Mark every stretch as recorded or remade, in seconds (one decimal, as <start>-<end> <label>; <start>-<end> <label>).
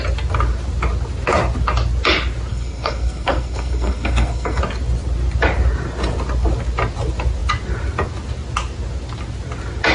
0.0-2.5 recorded; 2.5-4.6 remade; 4.6-9.9 recorded